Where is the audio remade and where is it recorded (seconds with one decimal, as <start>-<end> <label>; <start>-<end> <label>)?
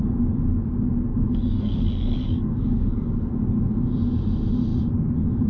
0.0-1.1 recorded; 1.1-3.3 remade; 3.3-5.5 recorded